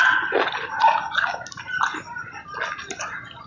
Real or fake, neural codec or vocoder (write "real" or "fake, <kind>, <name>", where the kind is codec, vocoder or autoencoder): real